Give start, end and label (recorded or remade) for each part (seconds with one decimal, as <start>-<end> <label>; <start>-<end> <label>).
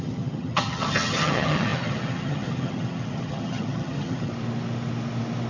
0.0-4.3 remade; 4.3-5.5 recorded